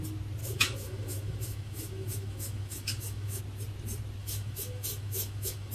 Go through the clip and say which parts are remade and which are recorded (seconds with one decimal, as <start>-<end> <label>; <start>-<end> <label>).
0.0-0.4 recorded; 0.4-3.4 remade; 3.4-4.2 recorded; 4.2-5.7 remade